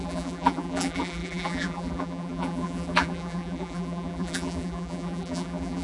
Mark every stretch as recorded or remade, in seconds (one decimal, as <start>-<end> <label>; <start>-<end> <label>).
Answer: 0.0-5.8 remade